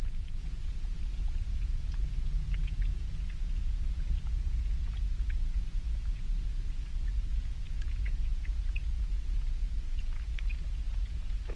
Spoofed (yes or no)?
yes